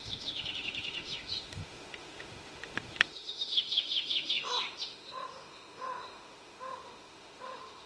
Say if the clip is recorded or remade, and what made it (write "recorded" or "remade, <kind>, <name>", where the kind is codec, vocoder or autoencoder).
remade, autoencoder, DAC-VAE